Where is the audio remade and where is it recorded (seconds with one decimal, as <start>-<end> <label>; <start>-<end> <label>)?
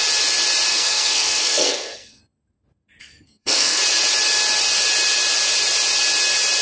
0.0-0.7 recorded; 0.7-2.2 remade; 2.2-3.0 recorded; 3.0-3.8 remade; 3.8-6.6 recorded